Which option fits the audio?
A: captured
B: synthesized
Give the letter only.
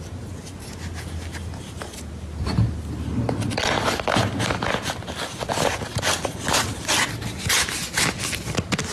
A